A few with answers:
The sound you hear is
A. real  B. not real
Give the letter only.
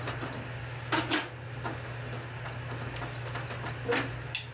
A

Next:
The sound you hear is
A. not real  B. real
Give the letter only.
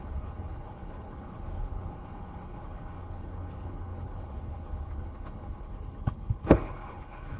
A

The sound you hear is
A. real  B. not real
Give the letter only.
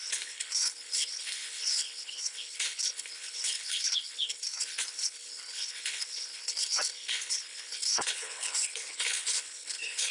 B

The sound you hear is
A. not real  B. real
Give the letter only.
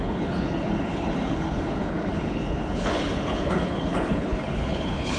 A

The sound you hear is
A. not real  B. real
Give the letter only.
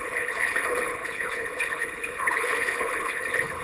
A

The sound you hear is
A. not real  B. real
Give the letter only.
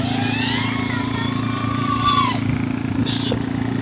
B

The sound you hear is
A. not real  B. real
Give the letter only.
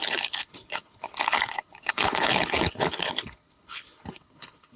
A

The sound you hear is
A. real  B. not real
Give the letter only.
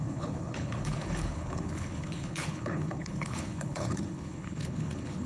B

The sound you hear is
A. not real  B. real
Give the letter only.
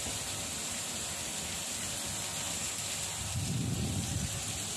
B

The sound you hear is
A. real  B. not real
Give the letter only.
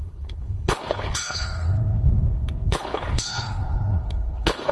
B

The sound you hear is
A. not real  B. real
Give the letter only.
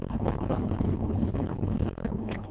A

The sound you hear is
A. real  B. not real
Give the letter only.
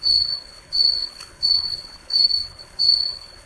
B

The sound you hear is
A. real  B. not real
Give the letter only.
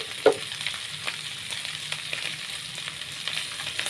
A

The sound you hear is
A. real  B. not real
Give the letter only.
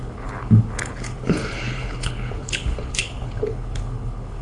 B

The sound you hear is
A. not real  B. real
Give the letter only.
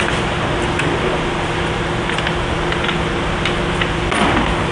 B